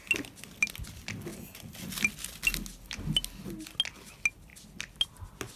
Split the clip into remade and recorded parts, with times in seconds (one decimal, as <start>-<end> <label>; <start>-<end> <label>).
0.0-1.3 recorded; 1.3-2.1 remade; 2.1-5.6 recorded